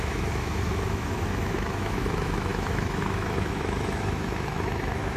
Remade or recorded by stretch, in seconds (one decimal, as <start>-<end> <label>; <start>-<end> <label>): 0.0-5.2 remade